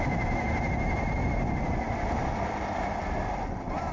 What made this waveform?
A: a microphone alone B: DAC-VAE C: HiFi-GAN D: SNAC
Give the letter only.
A